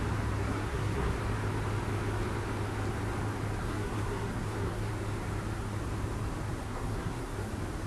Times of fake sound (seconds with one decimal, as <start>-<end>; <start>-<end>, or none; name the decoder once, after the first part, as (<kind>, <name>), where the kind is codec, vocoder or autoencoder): 0.4-1.2 (codec, SNAC); 3.6-4.9; 6.6-7.5